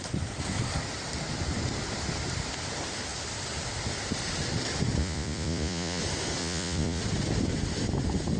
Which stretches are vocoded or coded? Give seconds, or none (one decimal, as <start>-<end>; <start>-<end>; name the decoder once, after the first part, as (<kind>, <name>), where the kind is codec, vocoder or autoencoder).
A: 5.0-6.0 (vocoder, Vocos); 6.4-7.0